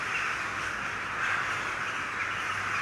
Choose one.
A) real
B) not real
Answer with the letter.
A